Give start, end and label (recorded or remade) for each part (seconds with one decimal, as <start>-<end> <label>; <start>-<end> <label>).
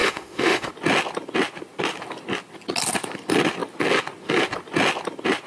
0.0-0.7 remade; 0.7-5.5 recorded